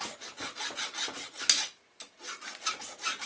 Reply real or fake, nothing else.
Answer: real